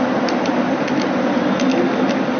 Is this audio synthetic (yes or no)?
no